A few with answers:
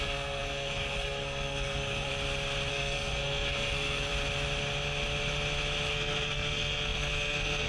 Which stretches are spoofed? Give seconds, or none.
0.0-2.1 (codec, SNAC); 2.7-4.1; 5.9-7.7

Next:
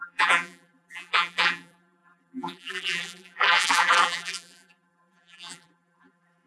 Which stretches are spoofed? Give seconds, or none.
0.0-6.5 (vocoder, BigVGAN v2)

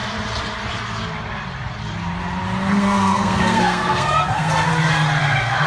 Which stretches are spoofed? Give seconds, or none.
2.7-4.7 (codec, SNAC); 5.2-5.7